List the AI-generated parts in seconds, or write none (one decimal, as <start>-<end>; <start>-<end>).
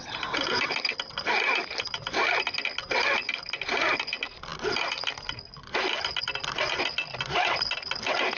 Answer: none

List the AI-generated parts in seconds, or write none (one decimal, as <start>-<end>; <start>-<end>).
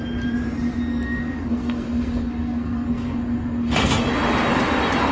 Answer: 0.9-4.0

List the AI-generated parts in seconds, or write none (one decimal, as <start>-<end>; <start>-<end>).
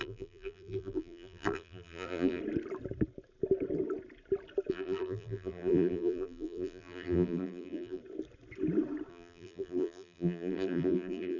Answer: 0.0-2.4; 4.7-8.0; 9.1-11.4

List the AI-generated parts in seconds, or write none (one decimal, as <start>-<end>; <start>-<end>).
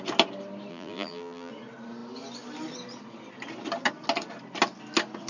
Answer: 0.7-1.5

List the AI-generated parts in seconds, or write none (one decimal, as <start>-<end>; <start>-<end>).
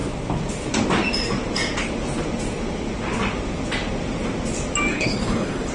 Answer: 4.9-5.7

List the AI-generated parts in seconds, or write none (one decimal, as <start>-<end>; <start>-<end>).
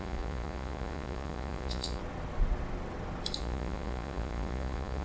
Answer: 0.0-2.0; 3.4-5.0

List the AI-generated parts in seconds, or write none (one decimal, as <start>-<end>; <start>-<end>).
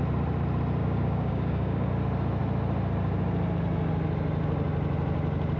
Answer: 0.8-1.9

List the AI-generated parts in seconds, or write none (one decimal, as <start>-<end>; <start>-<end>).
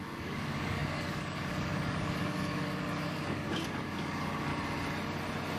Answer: 0.0-4.5